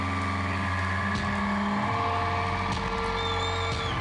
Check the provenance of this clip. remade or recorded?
recorded